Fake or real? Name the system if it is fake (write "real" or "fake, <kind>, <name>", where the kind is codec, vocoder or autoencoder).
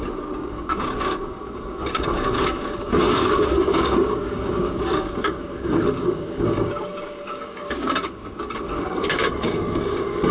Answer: fake, codec, DAC